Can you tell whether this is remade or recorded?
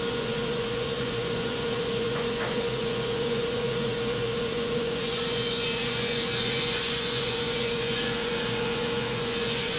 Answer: remade